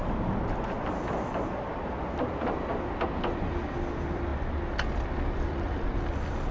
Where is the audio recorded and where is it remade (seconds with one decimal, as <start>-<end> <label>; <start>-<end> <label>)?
0.0-6.5 recorded